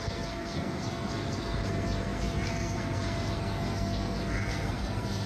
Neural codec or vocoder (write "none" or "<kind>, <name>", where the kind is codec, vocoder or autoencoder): codec, SNAC